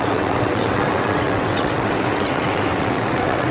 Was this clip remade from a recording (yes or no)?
yes